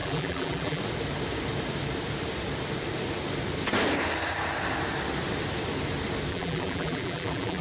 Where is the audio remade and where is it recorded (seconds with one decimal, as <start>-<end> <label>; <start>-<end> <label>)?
0.0-0.8 remade; 0.8-6.3 recorded; 6.3-7.6 remade